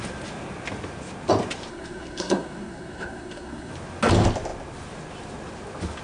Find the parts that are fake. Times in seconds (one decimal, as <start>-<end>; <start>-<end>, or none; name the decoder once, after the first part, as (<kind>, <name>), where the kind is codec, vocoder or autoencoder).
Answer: 1.7-3.7 (codec, SNAC)